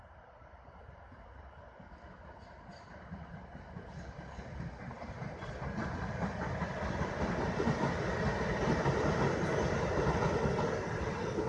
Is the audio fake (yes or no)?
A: no